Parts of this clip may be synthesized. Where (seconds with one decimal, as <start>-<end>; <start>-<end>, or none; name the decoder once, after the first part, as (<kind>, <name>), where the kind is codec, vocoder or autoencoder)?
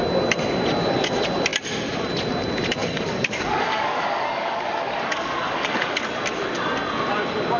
2.8-6.0 (codec, DAC)